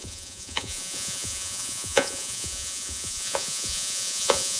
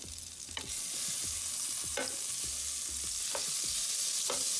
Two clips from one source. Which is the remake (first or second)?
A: first